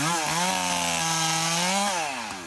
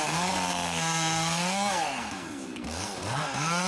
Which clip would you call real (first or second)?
first